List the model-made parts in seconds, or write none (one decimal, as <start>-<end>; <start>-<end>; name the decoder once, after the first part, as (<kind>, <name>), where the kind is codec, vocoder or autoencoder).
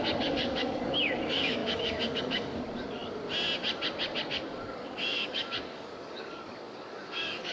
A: 0.0-3.0 (codec, DAC); 4.2-7.5